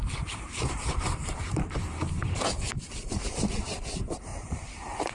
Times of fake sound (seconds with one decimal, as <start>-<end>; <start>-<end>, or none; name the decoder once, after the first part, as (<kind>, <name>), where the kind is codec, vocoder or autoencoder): 0.0-3.1 (vocoder, BigVGAN v2); 4.3-5.1